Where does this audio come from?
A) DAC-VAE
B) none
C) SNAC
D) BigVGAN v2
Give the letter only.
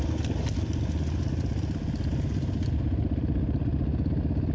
B